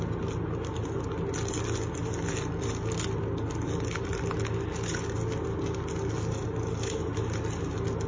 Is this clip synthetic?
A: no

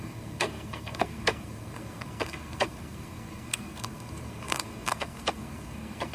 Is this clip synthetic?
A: yes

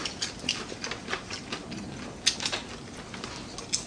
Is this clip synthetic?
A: no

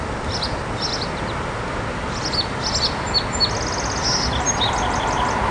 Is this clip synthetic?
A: no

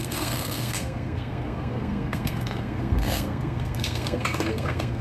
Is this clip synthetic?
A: yes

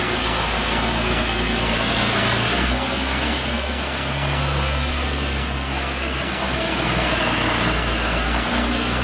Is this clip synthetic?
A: yes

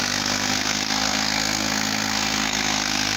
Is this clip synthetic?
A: yes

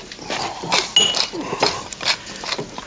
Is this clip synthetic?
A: no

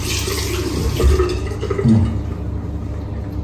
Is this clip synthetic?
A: no